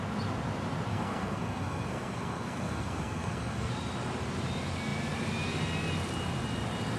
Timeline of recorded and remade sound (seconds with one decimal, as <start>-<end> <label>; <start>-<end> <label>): 0.0-0.9 recorded; 0.9-3.7 remade; 3.7-7.0 recorded